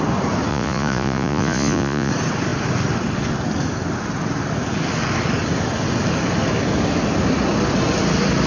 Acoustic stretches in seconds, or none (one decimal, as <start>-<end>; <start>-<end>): 0.0-0.5; 2.1-8.5